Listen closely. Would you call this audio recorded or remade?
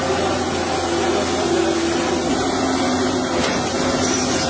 recorded